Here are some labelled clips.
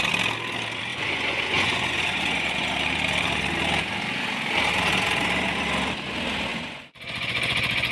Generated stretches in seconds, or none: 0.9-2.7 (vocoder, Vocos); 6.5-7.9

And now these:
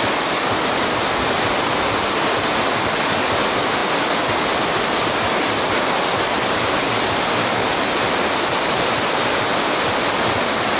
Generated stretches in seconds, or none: none

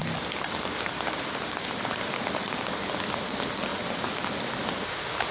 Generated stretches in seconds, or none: none